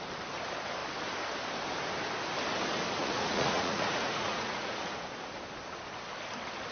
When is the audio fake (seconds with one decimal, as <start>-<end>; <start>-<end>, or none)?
3.0-4.8